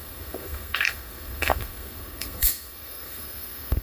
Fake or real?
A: fake